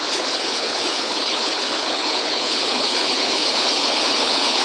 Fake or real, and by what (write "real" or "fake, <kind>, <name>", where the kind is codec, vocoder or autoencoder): fake, codec, HILCodec